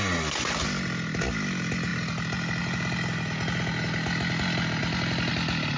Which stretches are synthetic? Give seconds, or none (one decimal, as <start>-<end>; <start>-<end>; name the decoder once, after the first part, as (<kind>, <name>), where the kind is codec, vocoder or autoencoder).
none